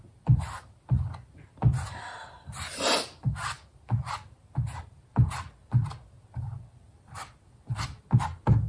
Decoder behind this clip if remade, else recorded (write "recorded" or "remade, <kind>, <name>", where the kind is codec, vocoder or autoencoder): recorded